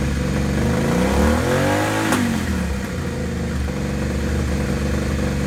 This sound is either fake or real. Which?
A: real